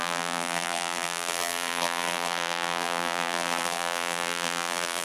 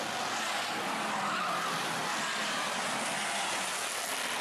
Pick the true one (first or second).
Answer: second